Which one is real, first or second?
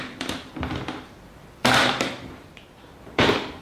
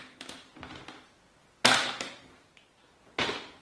second